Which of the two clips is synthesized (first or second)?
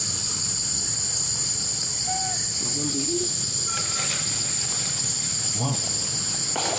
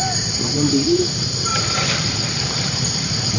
second